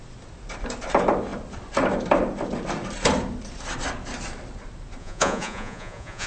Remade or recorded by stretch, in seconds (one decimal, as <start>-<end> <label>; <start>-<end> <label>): 0.0-5.0 recorded; 5.0-6.3 remade

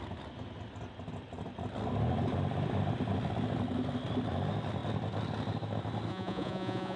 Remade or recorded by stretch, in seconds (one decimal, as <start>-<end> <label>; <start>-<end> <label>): 0.0-6.1 recorded; 6.1-7.0 remade

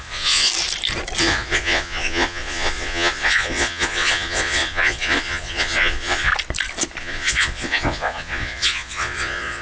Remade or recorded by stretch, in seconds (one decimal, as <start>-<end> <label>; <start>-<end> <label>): 0.0-0.5 remade; 0.5-1.2 recorded; 1.2-6.3 remade; 6.3-7.0 recorded; 7.0-9.6 remade

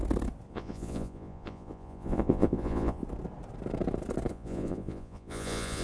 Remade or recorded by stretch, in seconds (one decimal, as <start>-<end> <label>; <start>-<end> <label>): 0.0-0.5 recorded; 0.5-3.0 remade; 3.0-4.3 recorded; 4.3-5.8 remade

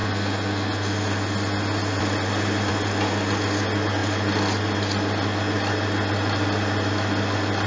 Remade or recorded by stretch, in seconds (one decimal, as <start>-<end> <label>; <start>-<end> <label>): 0.0-7.7 recorded

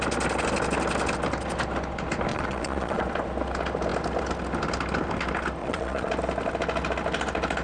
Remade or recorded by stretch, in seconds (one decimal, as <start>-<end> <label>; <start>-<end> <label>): 0.0-2.3 recorded; 2.3-3.0 remade; 3.0-5.6 recorded; 5.6-6.1 remade; 6.1-7.6 recorded

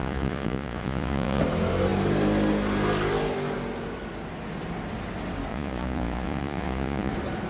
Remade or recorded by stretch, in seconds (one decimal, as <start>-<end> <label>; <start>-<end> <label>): 0.0-1.4 remade; 1.4-5.5 recorded; 5.5-7.1 remade; 7.1-7.5 recorded

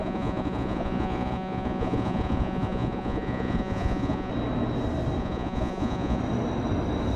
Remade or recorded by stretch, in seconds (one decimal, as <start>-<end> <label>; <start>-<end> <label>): 0.0-4.3 remade; 4.3-5.2 recorded; 5.2-6.2 remade; 6.2-7.2 recorded